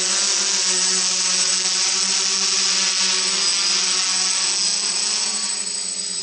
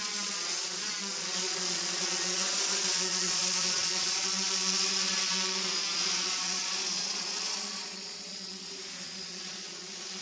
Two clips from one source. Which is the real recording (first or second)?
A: first